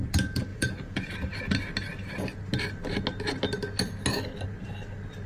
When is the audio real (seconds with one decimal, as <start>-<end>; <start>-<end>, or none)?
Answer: 0.0-0.5; 1.1-5.3